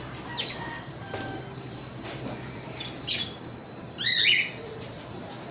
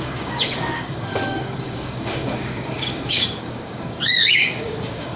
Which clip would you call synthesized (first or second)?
second